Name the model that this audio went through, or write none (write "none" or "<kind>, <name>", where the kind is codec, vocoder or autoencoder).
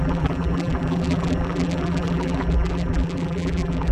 vocoder, BigVGAN v2